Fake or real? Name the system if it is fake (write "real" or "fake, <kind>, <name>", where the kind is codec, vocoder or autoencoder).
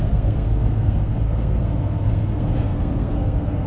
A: fake, codec, SNAC